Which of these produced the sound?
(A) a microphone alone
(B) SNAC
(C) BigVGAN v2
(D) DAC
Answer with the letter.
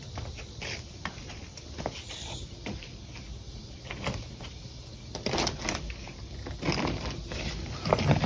A